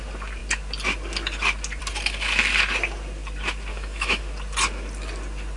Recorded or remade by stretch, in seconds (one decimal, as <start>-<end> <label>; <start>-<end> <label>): 0.0-3.7 recorded; 3.7-4.2 remade; 4.2-5.6 recorded